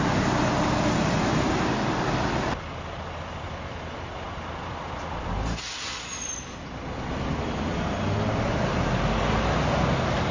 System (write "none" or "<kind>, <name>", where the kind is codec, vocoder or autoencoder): none